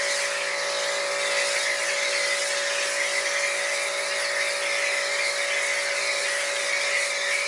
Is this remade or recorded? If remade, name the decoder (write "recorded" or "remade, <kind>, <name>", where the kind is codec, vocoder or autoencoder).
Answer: recorded